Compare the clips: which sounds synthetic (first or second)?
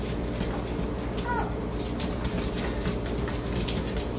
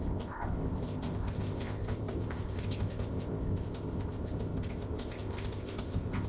second